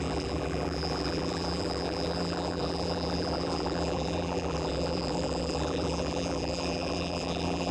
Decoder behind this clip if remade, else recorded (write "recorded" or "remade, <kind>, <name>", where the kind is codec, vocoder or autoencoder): remade, vocoder, BigVGAN v2